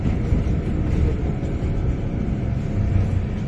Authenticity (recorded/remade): recorded